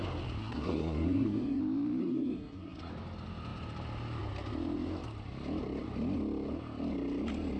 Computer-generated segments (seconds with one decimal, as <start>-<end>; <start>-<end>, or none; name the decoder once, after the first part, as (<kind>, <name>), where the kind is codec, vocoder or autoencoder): 0.4-1.6 (codec, SNAC); 2.0-2.9